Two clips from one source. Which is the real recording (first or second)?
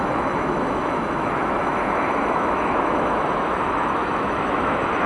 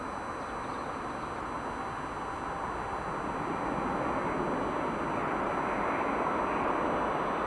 second